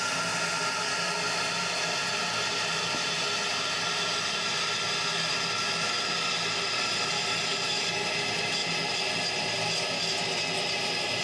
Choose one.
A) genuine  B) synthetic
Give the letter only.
A